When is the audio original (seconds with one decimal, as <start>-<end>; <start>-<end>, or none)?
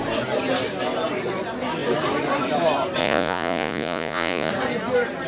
0.0-3.0; 4.5-5.3